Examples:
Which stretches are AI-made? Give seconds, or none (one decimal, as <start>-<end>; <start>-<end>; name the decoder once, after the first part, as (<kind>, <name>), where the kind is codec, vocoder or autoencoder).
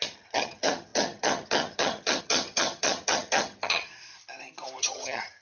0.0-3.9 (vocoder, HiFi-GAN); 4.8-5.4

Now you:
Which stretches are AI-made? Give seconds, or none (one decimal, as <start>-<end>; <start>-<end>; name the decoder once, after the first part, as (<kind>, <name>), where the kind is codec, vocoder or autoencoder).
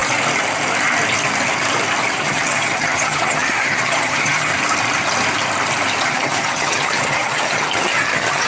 2.1-4.5 (vocoder, HiFi-GAN); 6.0-8.5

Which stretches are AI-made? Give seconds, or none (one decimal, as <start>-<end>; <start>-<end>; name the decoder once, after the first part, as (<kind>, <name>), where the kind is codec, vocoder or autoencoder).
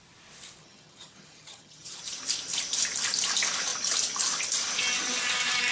0.6-2.0 (vocoder, HiFi-GAN)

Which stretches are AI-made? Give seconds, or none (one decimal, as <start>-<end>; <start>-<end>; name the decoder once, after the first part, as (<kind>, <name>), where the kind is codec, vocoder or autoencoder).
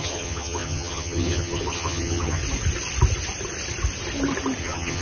0.0-2.4 (vocoder, HiFi-GAN); 4.6-5.0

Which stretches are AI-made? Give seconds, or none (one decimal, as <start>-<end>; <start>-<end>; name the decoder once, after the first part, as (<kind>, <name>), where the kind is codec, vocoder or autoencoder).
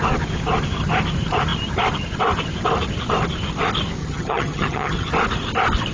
4.0-5.1 (vocoder, HiFi-GAN)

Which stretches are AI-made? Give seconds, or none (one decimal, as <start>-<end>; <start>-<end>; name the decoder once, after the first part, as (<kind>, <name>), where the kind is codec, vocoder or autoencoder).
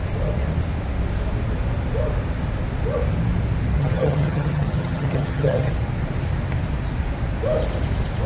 3.8-5.7 (vocoder, HiFi-GAN)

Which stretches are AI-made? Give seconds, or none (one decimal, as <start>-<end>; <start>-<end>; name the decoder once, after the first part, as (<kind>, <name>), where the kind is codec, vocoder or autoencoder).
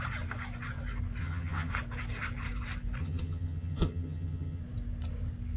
1.2-1.7 (vocoder, HiFi-GAN); 3.0-4.6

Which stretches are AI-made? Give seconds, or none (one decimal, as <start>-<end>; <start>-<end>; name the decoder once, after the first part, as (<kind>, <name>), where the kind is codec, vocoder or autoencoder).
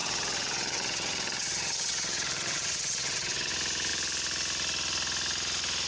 0.0-3.5 (vocoder, HiFi-GAN)